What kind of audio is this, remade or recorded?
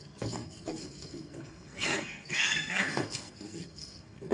remade